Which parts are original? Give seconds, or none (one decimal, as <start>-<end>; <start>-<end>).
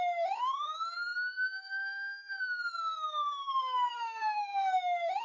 none